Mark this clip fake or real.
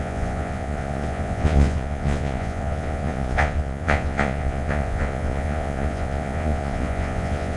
fake